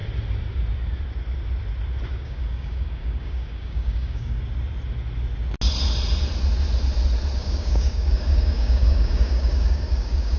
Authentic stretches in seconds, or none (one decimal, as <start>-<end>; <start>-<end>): 0.0-2.1; 4.4-7.4